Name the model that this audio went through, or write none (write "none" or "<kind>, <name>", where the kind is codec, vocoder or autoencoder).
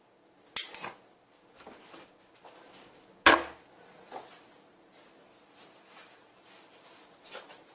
none